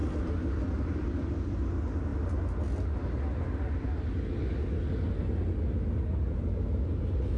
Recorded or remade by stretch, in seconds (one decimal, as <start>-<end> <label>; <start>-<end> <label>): 0.0-7.4 recorded

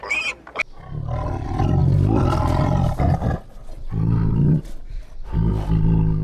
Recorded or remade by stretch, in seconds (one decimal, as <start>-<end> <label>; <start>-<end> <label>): 0.0-6.2 recorded

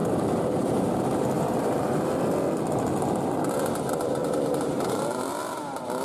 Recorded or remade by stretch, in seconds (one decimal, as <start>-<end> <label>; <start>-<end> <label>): 0.0-2.1 remade; 2.1-6.0 recorded

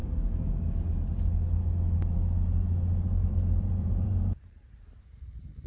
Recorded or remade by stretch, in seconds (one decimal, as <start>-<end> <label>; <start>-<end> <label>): 0.0-3.2 recorded; 3.2-5.7 remade